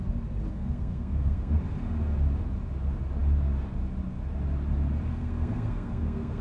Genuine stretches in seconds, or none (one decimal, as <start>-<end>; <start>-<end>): 0.0-0.5; 1.6-5.1